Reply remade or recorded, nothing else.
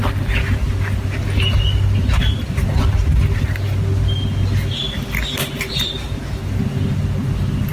recorded